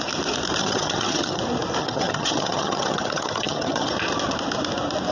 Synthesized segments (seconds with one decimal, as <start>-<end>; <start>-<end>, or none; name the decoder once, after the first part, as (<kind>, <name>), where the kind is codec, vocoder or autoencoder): 0.6-1.4 (vocoder, HiFi-GAN); 1.8-3.9